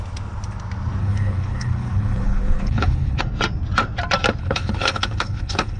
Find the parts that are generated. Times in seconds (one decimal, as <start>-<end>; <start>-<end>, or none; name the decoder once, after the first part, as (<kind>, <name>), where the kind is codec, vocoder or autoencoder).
1.0-3.2 (codec, HILCodec); 4.4-5.8